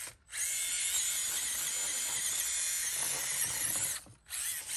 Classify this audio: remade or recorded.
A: recorded